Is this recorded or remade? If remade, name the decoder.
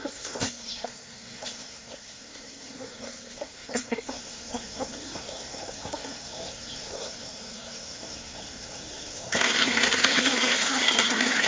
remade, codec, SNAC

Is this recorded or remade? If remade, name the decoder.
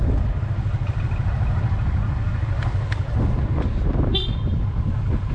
recorded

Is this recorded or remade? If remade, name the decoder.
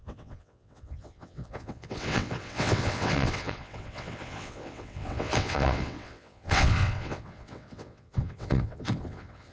remade, vocoder, WaveNeXt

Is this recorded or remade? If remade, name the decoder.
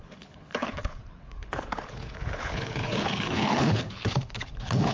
remade, codec, HILCodec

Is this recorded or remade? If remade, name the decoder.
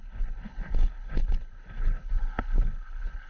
remade, codec, HILCodec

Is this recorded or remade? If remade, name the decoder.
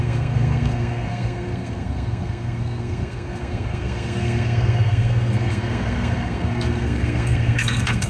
remade, codec, SNAC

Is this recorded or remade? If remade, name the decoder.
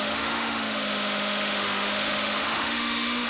remade, autoencoder, DAC-VAE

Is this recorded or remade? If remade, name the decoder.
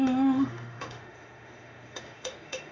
remade, autoencoder, DAC-VAE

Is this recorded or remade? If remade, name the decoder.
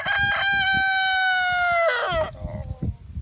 recorded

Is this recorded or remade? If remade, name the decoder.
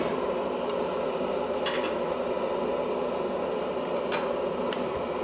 recorded